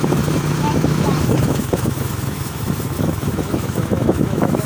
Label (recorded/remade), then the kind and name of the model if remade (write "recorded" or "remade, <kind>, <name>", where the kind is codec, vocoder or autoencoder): remade, autoencoder, DAC-VAE